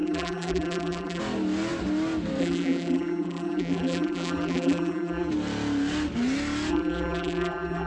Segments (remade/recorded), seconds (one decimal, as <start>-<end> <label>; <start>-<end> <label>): 0.0-1.2 remade; 1.2-2.4 recorded; 2.4-5.3 remade; 5.3-6.7 recorded; 6.7-7.9 remade